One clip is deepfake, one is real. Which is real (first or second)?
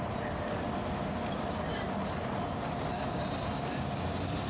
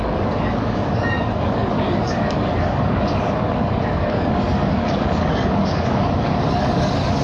first